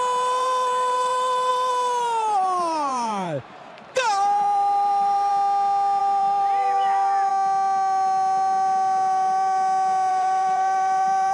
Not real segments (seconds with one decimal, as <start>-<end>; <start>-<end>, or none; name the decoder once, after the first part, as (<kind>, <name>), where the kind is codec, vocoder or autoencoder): 0.0-5.3 (vocoder, BigVGAN v2); 6.0-7.3; 10.1-11.3